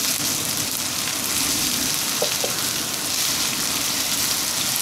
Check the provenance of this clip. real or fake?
real